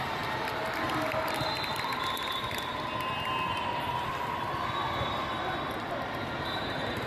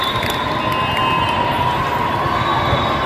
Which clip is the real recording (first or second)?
second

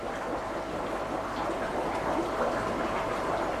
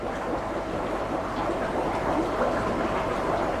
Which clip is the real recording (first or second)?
first